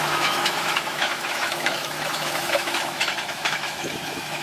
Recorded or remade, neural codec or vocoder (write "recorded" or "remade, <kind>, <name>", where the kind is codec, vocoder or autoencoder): remade, autoencoder, DAC-VAE